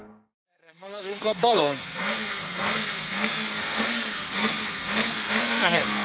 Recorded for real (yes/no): no